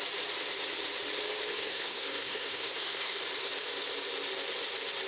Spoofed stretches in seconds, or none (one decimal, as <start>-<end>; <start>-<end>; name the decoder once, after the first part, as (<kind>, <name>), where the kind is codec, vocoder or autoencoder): 1.5-3.2 (codec, SNAC)